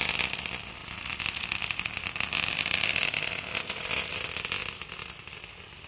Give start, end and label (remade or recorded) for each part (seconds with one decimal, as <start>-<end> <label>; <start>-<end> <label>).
0.0-5.9 recorded